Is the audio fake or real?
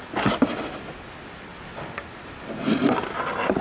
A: real